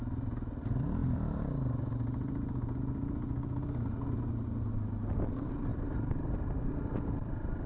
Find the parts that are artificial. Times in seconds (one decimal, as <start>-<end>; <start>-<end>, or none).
none